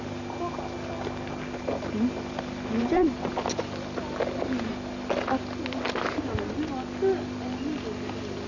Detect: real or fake fake